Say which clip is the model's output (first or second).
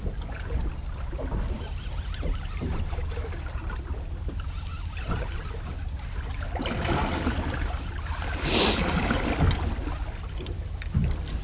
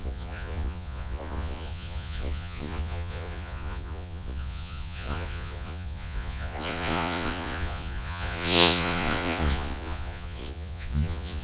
second